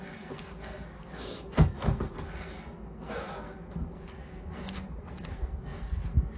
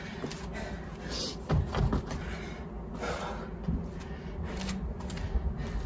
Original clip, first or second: second